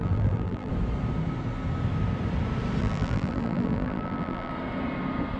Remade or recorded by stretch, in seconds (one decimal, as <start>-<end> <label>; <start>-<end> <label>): 0.0-0.7 remade; 0.7-2.8 recorded; 2.8-4.5 remade; 4.5-5.4 recorded